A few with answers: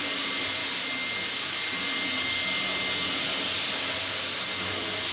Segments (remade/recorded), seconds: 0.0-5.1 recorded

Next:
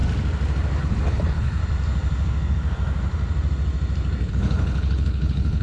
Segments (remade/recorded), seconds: 0.0-0.8 recorded; 0.8-1.6 remade; 1.6-4.3 recorded; 4.3-5.6 remade

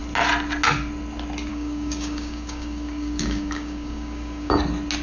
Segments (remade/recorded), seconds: 0.0-1.5 recorded; 1.5-4.5 remade; 4.5-5.0 recorded

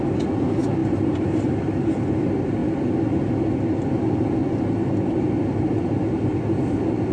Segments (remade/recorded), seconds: 0.0-7.1 recorded